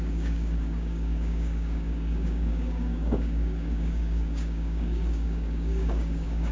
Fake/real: fake